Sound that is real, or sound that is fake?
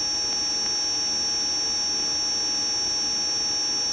real